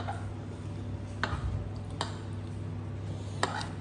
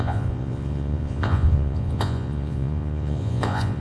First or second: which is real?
first